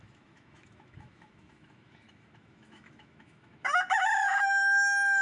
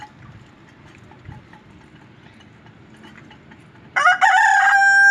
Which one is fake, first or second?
first